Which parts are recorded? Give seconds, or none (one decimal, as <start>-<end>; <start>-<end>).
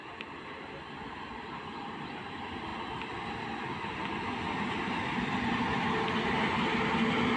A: 0.0-7.4